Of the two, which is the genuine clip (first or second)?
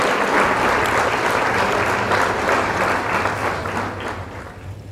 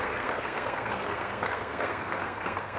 first